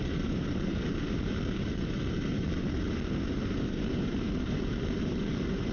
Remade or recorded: remade